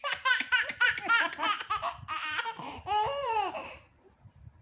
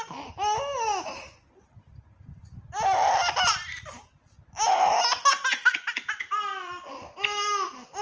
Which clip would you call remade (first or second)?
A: first